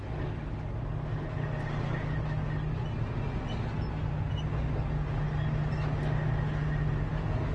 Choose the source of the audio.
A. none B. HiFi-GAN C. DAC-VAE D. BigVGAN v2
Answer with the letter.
A